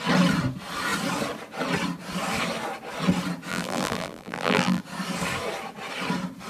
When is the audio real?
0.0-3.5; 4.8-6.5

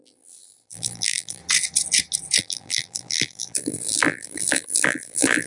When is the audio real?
1.4-2.4